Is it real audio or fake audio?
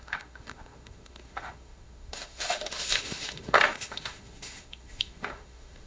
fake